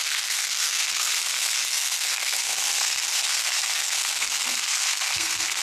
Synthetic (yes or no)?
yes